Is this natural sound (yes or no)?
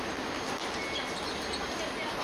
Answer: yes